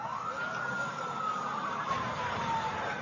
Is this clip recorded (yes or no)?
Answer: yes